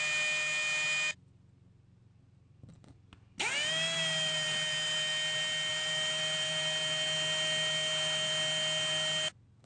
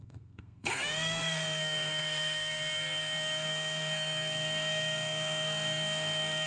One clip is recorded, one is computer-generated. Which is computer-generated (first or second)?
second